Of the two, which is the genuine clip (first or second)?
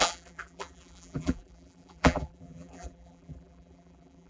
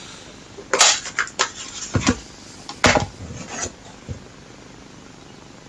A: second